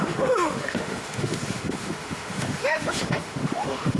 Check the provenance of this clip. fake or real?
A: fake